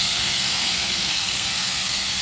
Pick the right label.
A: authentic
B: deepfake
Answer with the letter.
B